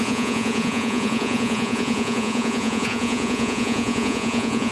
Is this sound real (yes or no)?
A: no